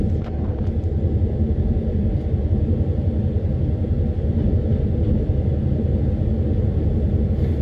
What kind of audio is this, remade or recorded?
recorded